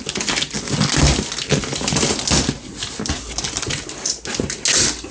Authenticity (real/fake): real